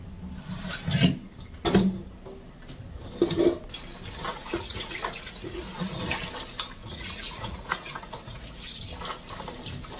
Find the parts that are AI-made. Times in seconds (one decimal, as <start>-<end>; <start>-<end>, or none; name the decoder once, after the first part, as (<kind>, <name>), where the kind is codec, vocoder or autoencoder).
4.3-6.0 (vocoder, Vocos); 6.8-8.8